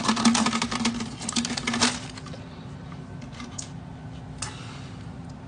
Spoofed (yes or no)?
no